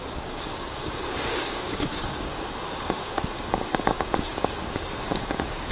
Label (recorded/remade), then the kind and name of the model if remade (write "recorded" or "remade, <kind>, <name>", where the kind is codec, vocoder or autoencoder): remade, codec, DAC